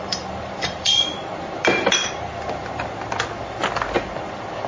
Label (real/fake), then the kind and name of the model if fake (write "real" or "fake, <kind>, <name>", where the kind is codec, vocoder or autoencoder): fake, vocoder, BigVGAN v2